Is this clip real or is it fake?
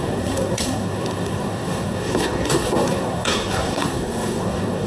fake